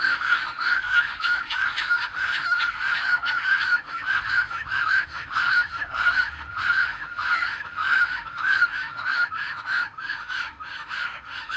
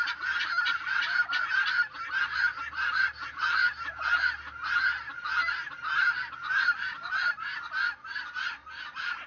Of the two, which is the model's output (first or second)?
first